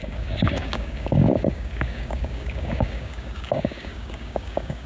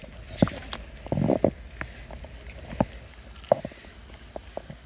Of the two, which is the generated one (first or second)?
first